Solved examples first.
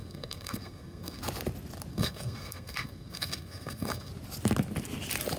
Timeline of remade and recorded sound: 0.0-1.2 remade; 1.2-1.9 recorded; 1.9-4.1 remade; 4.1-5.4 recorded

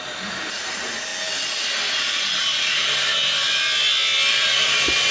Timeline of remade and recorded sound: 0.0-1.1 remade; 1.1-2.0 recorded; 2.0-3.1 remade; 3.1-4.3 recorded; 4.3-5.1 remade

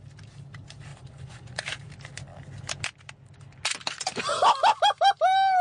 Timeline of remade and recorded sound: 0.0-0.9 recorded; 0.9-1.6 remade; 1.6-5.6 recorded

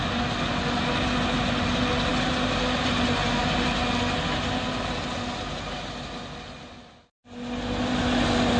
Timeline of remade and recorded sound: 0.0-8.6 recorded

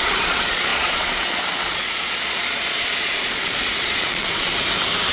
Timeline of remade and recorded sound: 0.0-4.5 remade; 4.5-5.1 recorded

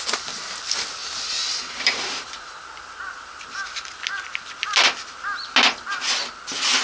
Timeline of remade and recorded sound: 0.0-6.8 recorded